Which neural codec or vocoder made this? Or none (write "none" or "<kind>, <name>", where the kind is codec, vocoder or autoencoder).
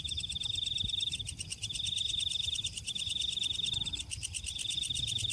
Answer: none